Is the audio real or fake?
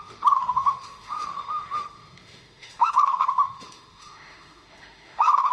fake